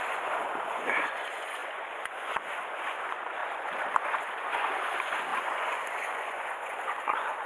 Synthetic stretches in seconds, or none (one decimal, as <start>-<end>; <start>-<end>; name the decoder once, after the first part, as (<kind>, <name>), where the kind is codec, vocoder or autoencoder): 0.0-7.5 (vocoder, Vocos)